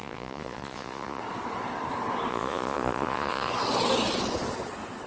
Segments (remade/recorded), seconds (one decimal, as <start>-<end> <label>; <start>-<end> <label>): 0.0-1.2 remade; 1.2-2.3 recorded; 2.3-3.5 remade; 3.5-5.1 recorded